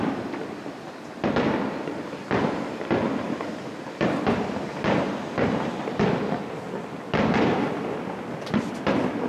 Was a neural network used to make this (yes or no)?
no